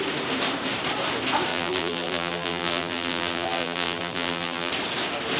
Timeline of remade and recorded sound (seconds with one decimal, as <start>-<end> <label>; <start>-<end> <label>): 0.0-1.5 recorded; 1.5-4.7 remade; 4.7-5.4 recorded